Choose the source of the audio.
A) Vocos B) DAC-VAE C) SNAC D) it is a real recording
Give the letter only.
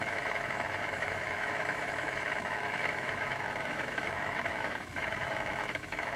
B